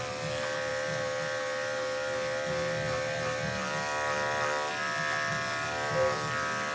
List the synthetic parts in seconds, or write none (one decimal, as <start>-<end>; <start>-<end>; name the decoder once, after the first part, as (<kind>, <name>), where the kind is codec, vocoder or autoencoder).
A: none